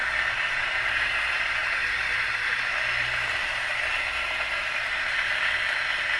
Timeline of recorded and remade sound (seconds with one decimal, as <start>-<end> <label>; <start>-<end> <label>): 0.0-6.2 recorded